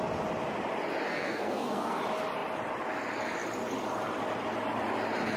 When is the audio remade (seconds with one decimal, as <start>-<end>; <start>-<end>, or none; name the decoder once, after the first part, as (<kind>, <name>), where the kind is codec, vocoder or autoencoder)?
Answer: 1.1-2.0 (codec, SNAC)

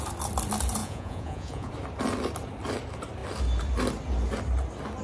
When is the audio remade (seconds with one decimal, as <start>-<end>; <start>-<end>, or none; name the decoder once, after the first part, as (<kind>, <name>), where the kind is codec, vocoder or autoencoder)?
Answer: 0.8-1.7 (vocoder, Vocos)

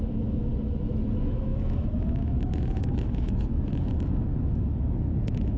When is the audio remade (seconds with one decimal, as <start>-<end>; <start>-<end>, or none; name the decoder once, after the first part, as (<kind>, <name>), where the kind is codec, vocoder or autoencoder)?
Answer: 0.0-0.5 (autoencoder, DAC-VAE); 1.1-5.6

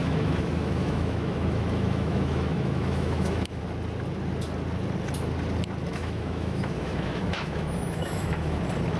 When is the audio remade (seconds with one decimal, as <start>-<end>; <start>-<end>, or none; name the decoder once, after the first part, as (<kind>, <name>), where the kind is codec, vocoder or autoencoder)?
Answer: 0.0-3.6 (autoencoder, DAC-VAE); 5.9-8.6